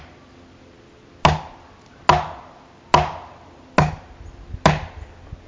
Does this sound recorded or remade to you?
recorded